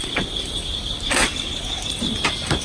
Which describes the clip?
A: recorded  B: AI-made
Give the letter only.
A